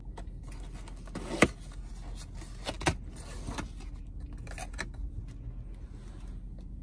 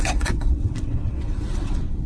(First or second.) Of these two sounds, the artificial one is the second